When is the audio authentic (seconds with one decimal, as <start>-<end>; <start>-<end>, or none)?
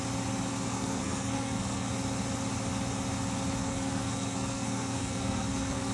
0.0-0.5; 1.9-3.6